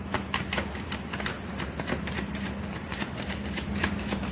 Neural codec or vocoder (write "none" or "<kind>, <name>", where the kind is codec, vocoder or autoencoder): none